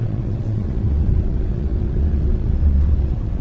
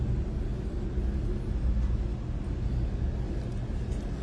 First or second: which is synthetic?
first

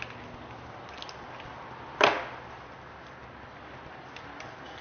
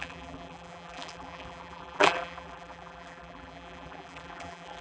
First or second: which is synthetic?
second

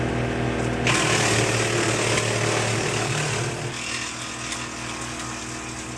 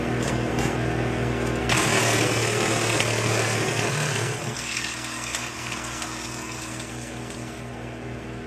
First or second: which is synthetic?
second